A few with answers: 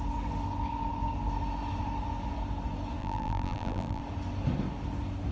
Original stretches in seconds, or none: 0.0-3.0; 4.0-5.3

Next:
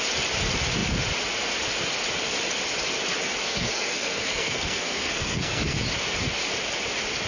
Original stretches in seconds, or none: 0.0-3.4; 5.8-7.3